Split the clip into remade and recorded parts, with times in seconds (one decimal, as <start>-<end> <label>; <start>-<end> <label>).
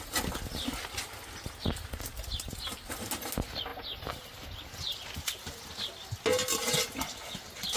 0.0-7.8 recorded